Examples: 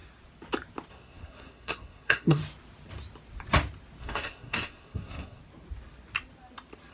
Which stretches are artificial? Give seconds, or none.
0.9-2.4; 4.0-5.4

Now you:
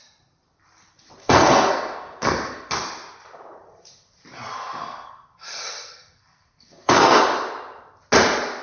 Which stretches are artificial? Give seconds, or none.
1.2-2.7; 4.8-7.2

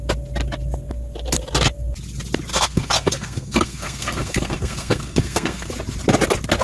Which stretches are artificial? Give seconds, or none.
2.5-5.7

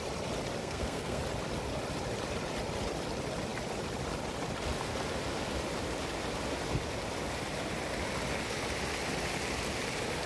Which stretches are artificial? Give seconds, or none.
0.6-1.2

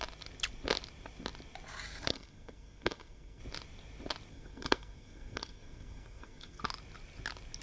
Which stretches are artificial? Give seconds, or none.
2.1-3.4; 4.3-6.6

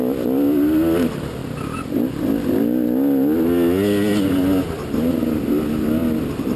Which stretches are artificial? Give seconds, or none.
none

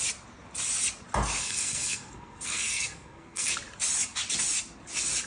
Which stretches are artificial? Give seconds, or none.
1.4-3.5

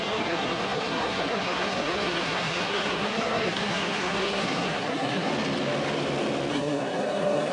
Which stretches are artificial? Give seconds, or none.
0.0-5.3; 6.5-7.5